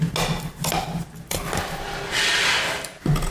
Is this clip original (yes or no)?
yes